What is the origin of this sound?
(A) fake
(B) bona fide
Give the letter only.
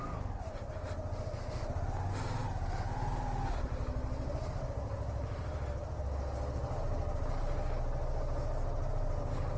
B